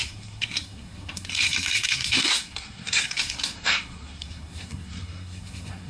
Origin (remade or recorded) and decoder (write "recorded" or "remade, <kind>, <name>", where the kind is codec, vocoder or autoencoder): remade, codec, SNAC